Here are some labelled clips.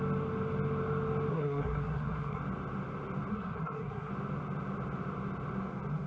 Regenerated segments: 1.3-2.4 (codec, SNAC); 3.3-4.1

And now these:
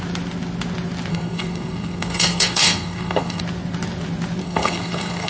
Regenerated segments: 1.1-3.4 (codec, SNAC); 4.4-5.3